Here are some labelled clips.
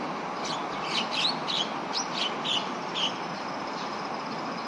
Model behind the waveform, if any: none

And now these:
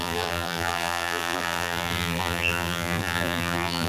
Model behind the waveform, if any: vocoder, BigVGAN v2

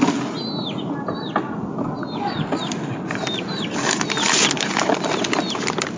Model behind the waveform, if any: none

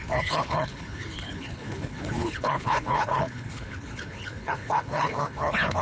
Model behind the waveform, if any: codec, HILCodec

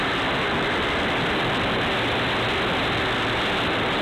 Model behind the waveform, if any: none